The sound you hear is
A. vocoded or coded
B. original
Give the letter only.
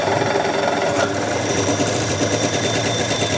A